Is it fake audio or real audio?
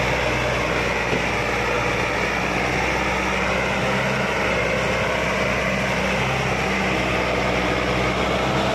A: real